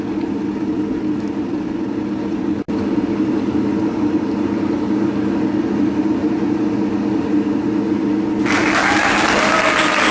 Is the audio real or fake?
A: real